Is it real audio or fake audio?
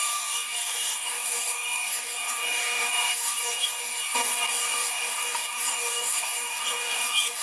fake